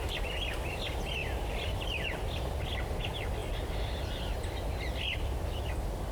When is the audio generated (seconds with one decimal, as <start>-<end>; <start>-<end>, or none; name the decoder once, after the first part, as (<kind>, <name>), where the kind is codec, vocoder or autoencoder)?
1.2-2.6 (vocoder, BigVGAN v2)

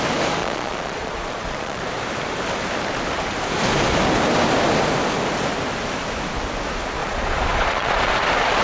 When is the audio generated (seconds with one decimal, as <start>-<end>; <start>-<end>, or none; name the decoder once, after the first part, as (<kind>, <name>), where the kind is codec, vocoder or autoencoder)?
0.4-1.8 (vocoder, Vocos); 7.0-8.1

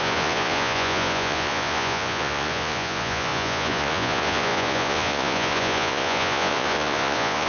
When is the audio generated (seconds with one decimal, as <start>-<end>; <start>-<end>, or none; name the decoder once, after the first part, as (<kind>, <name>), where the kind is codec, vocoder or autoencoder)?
0.0-7.5 (vocoder, Vocos)

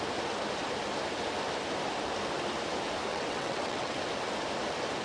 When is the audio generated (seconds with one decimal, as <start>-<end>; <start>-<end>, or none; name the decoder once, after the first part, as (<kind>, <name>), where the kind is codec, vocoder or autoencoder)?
3.1-4.0 (vocoder, WaveNeXt)

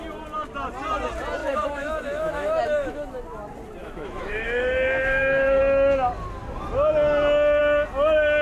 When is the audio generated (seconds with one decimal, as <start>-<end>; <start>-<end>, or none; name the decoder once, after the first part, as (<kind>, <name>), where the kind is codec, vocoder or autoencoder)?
1.4-3.1 (autoencoder, DAC-VAE); 3.8-5.6

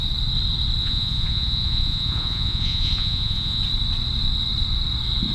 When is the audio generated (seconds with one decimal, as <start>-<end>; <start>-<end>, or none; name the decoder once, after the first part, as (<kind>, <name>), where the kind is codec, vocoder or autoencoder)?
0.8-3.6 (vocoder, Vocos)